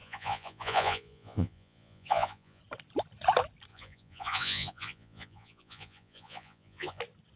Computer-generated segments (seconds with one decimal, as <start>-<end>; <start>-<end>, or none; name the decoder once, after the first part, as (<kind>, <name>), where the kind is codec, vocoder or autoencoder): 0.0-2.6 (vocoder, Vocos); 3.7-7.0